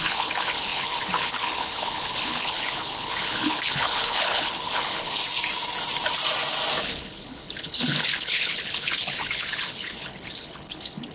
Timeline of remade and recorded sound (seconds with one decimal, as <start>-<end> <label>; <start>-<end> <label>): 0.0-5.2 remade; 5.2-6.8 recorded; 6.8-11.1 remade